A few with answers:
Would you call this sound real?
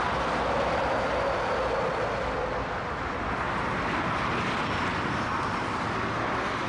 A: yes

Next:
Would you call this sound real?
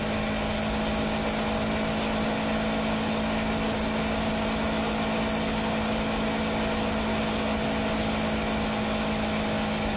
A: yes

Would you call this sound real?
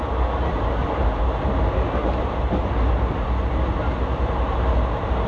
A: yes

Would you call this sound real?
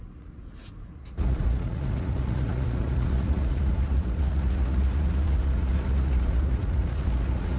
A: no